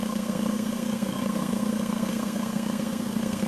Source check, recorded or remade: remade